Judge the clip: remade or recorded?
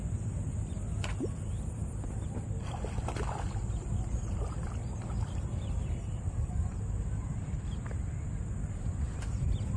remade